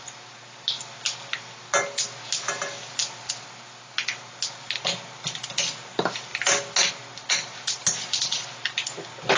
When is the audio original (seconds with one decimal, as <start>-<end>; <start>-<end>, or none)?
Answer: 0.0-9.4